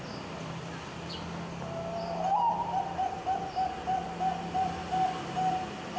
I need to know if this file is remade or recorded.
recorded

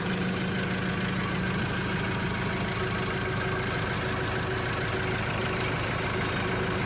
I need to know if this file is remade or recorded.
recorded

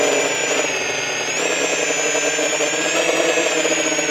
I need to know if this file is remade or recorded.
recorded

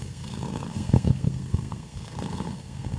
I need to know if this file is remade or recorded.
remade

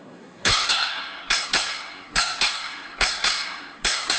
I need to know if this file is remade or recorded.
remade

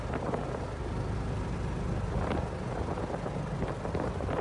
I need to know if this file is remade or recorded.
recorded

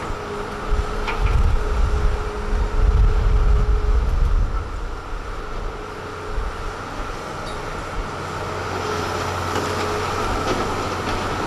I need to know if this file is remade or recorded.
recorded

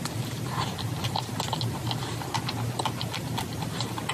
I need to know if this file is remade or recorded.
recorded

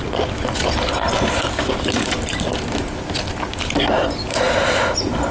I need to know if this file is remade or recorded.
recorded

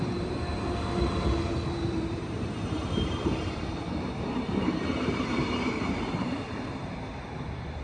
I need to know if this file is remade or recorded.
remade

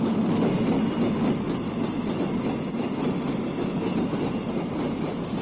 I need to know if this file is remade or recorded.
recorded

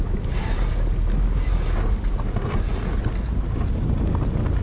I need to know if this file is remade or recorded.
recorded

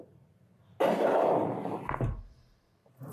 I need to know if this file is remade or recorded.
remade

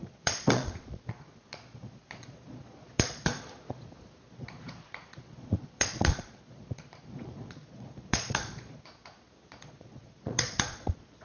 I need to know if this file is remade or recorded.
remade